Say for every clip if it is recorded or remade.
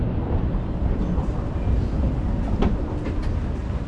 recorded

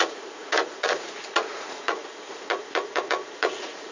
remade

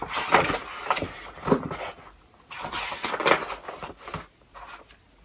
recorded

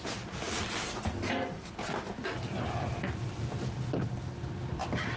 recorded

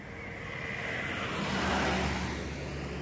recorded